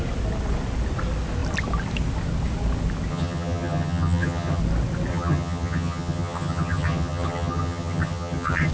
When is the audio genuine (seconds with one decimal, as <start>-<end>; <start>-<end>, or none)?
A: 0.0-3.1; 4.6-5.1